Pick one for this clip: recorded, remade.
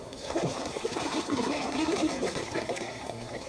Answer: remade